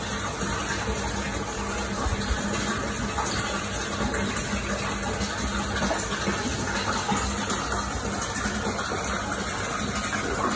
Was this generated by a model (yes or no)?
no